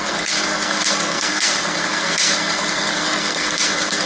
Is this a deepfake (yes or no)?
yes